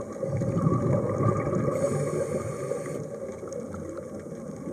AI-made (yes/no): no